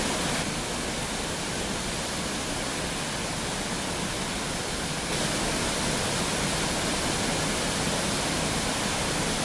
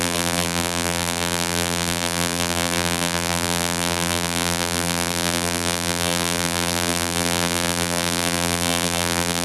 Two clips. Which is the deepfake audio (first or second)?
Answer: second